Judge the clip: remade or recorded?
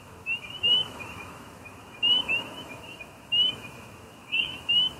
remade